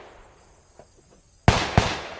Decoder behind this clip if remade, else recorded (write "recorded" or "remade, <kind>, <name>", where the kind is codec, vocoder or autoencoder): recorded